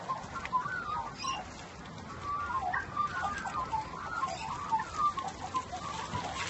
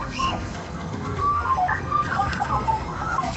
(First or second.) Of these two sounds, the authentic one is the first